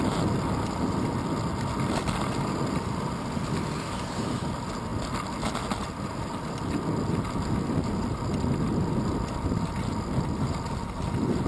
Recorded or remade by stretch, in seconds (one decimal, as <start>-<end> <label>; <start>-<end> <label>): 0.0-11.5 recorded